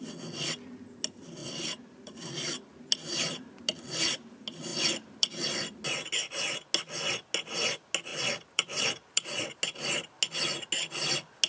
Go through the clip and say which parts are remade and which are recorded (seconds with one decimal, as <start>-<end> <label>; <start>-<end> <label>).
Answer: 0.0-1.4 recorded; 1.4-2.3 remade; 2.3-4.7 recorded; 4.7-5.8 remade; 5.8-8.1 recorded; 8.1-9.5 remade; 9.5-11.5 recorded

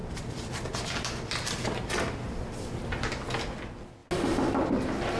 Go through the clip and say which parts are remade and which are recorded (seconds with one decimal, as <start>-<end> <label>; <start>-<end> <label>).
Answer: 0.0-3.1 remade; 3.1-5.2 recorded

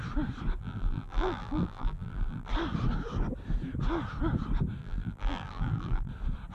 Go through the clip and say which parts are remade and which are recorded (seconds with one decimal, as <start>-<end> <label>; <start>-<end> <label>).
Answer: 0.0-0.6 recorded; 0.6-2.5 remade; 2.5-4.8 recorded; 4.8-6.1 remade; 6.1-6.5 recorded

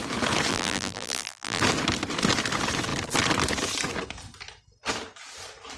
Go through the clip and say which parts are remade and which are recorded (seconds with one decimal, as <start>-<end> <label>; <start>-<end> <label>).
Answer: 0.0-0.5 recorded; 0.5-1.6 remade; 1.6-5.8 recorded

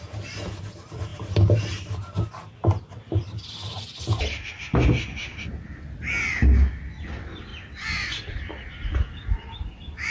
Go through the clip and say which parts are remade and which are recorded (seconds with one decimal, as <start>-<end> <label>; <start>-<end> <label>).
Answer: 0.0-1.1 recorded; 1.1-3.8 remade; 3.8-10.1 recorded

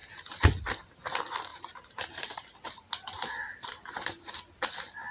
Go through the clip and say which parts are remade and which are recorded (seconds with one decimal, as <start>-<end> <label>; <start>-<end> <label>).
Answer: 0.0-0.8 remade; 0.8-1.5 recorded; 1.5-4.6 remade; 4.6-5.1 recorded